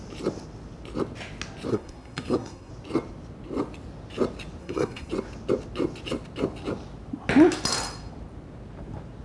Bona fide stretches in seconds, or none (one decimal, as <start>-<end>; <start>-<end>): 0.0-1.7; 2.7-4.6; 5.1-9.2